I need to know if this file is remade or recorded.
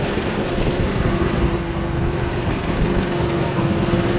remade